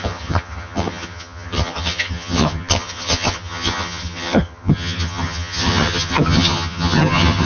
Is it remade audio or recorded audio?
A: remade